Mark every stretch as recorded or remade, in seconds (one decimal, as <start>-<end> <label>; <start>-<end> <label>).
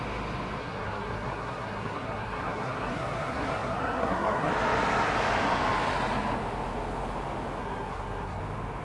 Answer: 0.0-0.6 recorded; 0.6-4.5 remade; 4.5-7.6 recorded; 7.6-8.4 remade; 8.4-8.8 recorded